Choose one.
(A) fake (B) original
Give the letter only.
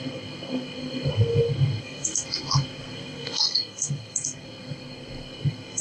A